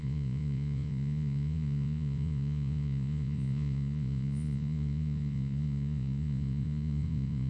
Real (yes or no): no